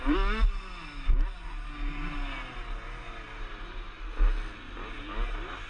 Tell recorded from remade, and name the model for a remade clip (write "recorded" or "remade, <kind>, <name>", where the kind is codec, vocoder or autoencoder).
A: recorded